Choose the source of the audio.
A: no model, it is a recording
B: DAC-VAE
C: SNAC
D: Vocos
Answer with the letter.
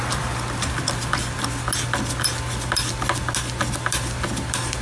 A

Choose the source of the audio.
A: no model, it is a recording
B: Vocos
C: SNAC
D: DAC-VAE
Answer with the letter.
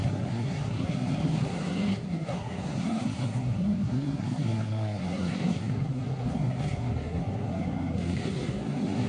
C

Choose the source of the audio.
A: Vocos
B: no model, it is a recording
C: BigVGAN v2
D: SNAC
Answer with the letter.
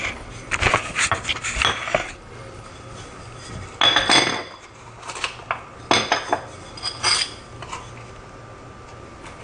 B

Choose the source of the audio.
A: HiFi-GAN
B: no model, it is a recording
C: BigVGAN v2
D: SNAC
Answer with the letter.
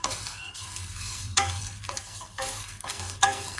D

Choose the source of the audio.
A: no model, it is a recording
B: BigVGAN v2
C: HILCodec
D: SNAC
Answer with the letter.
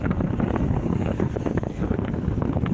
D